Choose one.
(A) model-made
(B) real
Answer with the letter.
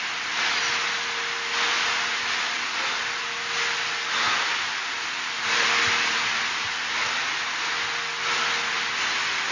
B